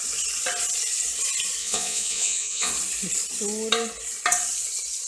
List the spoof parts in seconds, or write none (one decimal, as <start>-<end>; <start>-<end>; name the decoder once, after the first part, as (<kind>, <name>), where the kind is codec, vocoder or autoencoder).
1.6-2.7 (vocoder, Vocos)